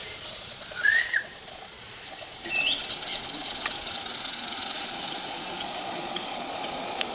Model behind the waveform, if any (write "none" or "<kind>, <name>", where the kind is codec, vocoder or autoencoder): vocoder, Vocos